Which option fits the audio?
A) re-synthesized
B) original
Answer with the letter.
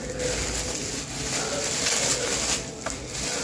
B